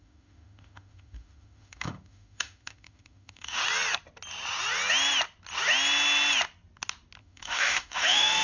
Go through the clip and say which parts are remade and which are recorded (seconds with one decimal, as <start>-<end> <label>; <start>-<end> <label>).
0.0-3.6 remade; 3.6-7.2 recorded; 7.2-8.4 remade